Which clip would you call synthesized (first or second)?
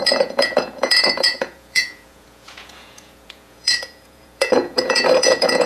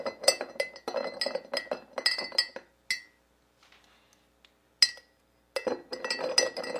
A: first